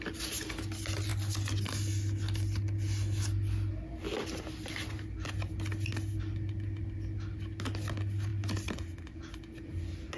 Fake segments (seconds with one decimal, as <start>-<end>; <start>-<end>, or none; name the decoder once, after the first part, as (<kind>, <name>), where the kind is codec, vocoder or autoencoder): none